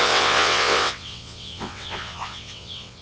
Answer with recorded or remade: remade